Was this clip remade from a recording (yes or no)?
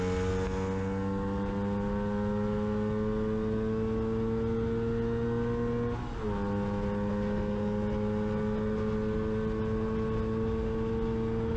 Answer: no